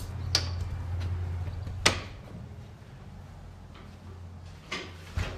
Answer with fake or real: real